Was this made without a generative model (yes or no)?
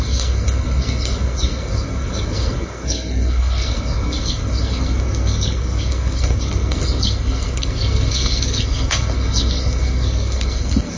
no